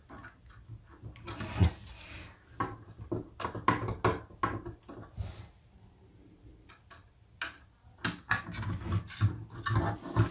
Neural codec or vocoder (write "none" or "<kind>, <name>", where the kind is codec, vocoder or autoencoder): none